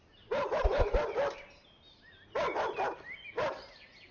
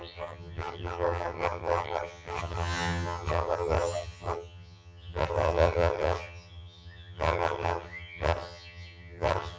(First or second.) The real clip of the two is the first